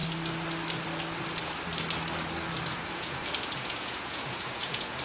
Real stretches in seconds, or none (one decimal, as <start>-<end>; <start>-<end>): 0.0-2.7; 3.2-3.6